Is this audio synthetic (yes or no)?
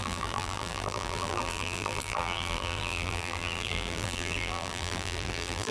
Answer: yes